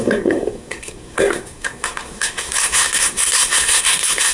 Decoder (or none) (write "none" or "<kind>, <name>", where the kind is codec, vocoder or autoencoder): codec, SNAC